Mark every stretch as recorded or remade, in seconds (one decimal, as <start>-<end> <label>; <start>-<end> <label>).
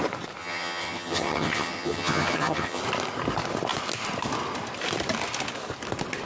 0.0-0.4 recorded; 0.4-2.8 remade; 2.8-6.3 recorded